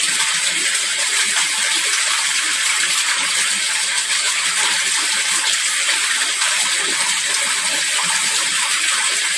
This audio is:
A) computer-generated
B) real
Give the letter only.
A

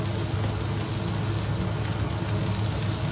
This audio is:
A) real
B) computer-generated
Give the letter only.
A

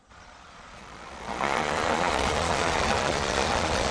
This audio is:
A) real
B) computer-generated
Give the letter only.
B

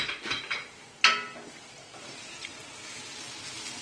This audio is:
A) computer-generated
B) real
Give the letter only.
B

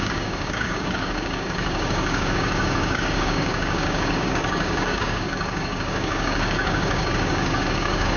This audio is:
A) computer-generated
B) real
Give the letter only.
A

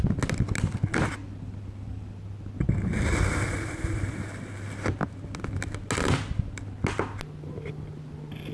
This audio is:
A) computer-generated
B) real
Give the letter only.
B